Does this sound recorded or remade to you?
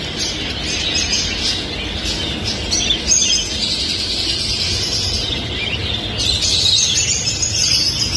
recorded